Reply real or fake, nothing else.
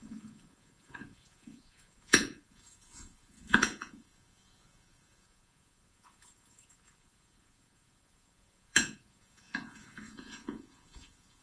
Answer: fake